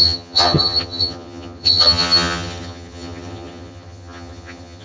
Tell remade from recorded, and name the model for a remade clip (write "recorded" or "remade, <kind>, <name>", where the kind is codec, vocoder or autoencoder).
remade, vocoder, HiFi-GAN